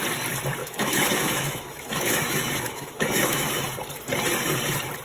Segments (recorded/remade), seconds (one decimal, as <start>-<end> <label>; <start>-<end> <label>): 0.0-0.6 recorded; 0.6-3.6 remade; 3.6-5.0 recorded

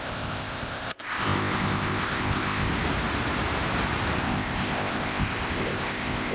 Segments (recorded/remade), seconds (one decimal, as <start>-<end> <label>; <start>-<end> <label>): 0.0-2.7 remade; 2.7-4.2 recorded; 4.2-6.3 remade